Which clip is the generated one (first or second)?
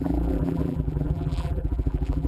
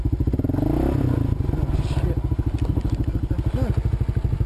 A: first